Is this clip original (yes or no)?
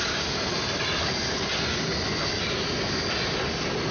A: yes